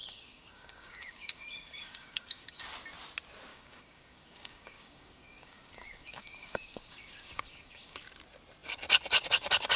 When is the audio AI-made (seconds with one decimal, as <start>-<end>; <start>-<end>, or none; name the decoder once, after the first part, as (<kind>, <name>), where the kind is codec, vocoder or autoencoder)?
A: 0.0-2.6 (codec, DAC); 3.5-8.0